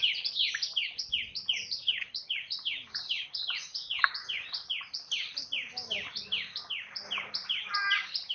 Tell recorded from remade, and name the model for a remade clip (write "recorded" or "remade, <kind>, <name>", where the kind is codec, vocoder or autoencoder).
remade, vocoder, BigVGAN v2